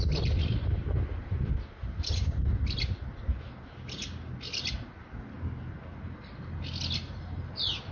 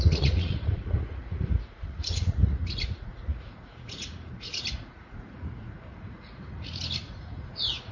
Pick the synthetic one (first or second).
second